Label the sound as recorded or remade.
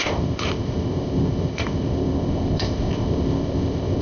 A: remade